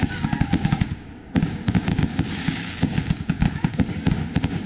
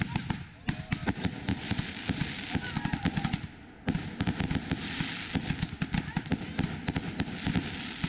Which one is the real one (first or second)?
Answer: second